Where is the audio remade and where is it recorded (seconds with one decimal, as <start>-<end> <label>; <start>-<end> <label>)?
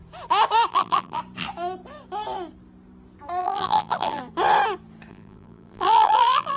0.0-0.7 recorded; 0.7-1.2 remade; 1.2-3.4 recorded; 3.4-4.2 remade; 4.2-5.1 recorded; 5.1-6.6 remade